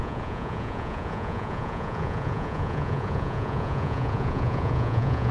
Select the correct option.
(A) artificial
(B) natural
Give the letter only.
A